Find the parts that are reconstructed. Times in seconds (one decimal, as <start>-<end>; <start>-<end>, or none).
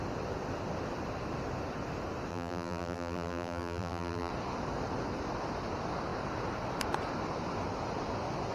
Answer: 2.3-4.3